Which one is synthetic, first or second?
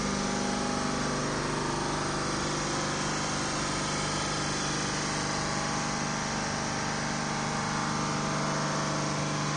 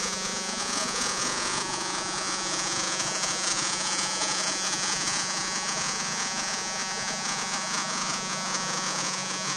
second